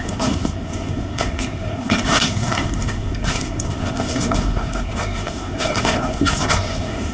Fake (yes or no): yes